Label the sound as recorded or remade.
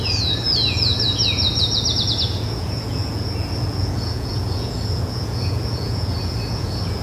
remade